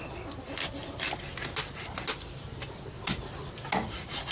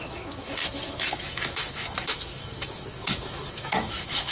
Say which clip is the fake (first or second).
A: second